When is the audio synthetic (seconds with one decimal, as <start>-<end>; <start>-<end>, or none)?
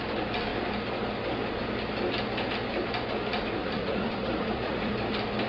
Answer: 3.6-4.9